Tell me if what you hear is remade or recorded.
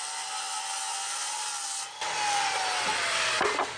recorded